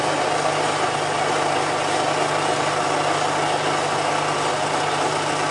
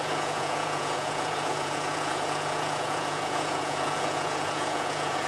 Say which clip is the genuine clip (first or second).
first